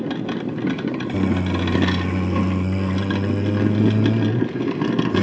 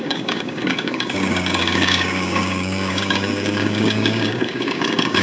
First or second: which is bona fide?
first